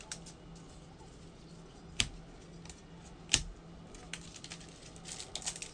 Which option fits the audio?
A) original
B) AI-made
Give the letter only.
A